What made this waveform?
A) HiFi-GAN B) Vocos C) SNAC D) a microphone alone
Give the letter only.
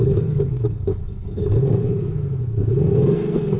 C